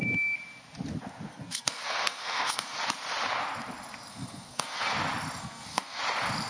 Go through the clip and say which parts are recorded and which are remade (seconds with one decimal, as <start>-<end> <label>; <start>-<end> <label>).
0.0-1.3 recorded; 1.3-2.8 remade; 2.8-4.1 recorded; 4.1-4.9 remade; 4.9-5.4 recorded; 5.4-6.0 remade; 6.0-6.5 recorded